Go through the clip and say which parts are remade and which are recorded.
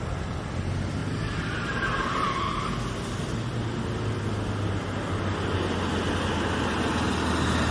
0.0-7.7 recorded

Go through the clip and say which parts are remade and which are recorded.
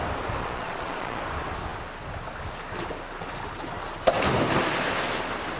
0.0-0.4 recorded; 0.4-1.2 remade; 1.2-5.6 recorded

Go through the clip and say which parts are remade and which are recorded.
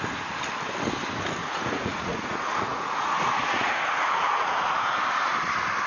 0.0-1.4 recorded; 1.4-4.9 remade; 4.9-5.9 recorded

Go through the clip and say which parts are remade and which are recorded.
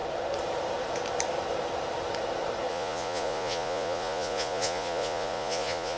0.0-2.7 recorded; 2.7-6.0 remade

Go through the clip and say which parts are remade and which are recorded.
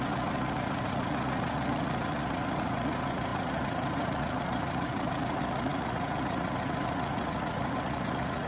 0.0-8.5 remade